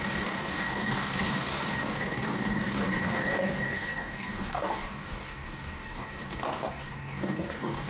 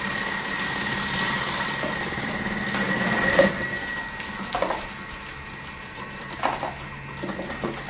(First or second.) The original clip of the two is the second